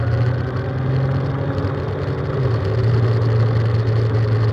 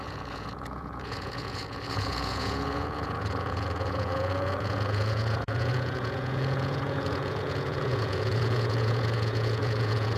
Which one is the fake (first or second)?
second